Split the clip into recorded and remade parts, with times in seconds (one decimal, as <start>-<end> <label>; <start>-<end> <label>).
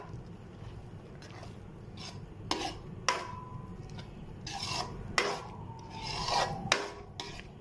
0.0-7.6 recorded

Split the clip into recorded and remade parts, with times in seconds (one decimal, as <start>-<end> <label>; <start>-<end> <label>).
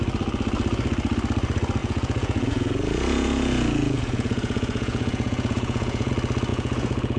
0.0-1.8 recorded; 1.8-6.1 remade; 6.1-6.5 recorded; 6.5-7.2 remade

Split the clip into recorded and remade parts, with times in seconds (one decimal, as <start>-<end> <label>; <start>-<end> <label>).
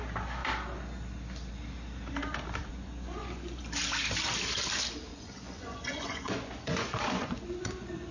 0.0-2.6 recorded; 2.6-3.6 remade; 3.6-5.1 recorded; 5.1-8.1 remade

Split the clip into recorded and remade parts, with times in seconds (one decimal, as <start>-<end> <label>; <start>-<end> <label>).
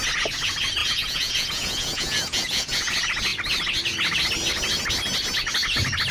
0.0-0.8 recorded; 0.8-2.9 remade; 2.9-6.1 recorded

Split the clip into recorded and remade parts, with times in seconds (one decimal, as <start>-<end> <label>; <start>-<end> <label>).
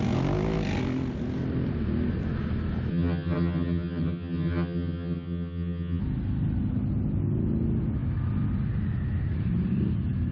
0.0-2.9 recorded; 2.9-6.0 remade; 6.0-10.3 recorded